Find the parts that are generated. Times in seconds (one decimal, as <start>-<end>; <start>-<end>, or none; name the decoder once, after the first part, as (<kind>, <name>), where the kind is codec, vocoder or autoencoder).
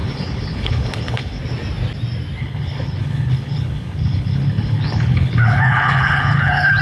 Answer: 0.0-1.4 (codec, HILCodec); 2.4-6.8